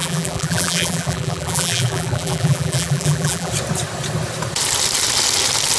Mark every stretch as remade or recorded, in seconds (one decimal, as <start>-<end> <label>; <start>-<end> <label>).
0.0-3.5 remade; 3.5-5.8 recorded